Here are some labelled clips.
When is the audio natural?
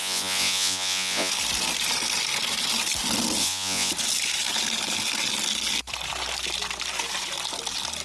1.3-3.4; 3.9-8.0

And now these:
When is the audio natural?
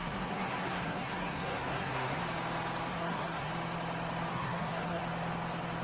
2.2-2.9; 3.5-4.3; 5.0-5.8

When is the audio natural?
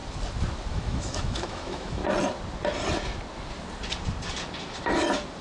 0.0-0.7; 2.0-5.4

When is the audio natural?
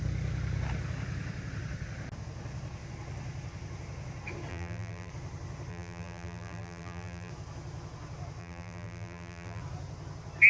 0.0-4.5; 5.1-5.7; 7.3-8.4; 9.6-10.5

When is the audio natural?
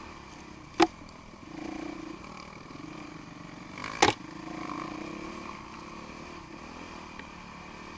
0.0-8.0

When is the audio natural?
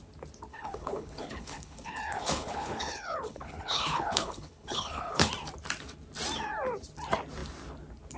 0.0-0.5; 5.3-8.2